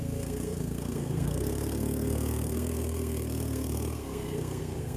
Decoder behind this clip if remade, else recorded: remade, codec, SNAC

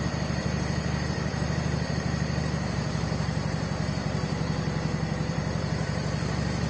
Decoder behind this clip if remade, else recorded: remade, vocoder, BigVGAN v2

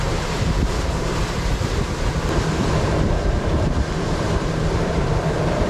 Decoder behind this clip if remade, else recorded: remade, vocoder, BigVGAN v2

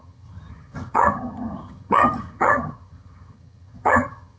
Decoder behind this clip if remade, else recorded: remade, vocoder, HiFi-GAN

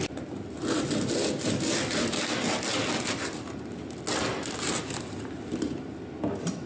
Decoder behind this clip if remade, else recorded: recorded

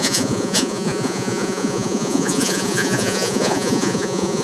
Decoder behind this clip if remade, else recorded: remade, vocoder, Vocos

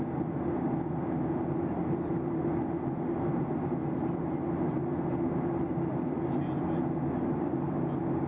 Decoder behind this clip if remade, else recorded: recorded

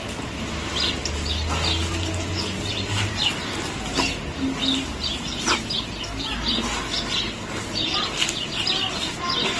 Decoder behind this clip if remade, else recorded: recorded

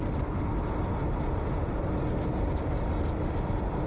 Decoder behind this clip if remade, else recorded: recorded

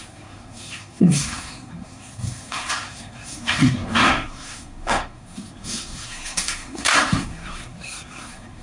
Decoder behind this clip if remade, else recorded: remade, codec, SNAC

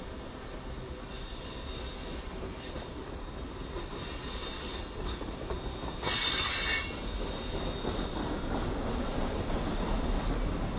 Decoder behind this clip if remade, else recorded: recorded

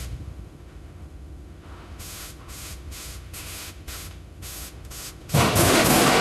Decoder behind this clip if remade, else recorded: remade, autoencoder, DAC-VAE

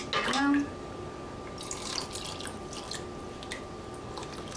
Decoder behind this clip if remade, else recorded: recorded